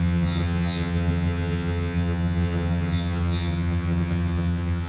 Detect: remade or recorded remade